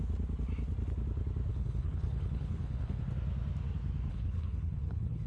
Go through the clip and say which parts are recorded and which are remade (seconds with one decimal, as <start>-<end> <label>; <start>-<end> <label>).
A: 0.0-1.5 recorded; 1.5-3.0 remade; 3.0-4.1 recorded; 4.1-5.3 remade